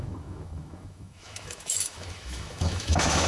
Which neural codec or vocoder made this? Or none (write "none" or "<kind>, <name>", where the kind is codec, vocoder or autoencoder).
autoencoder, DAC-VAE